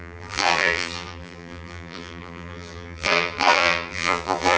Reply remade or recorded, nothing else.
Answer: remade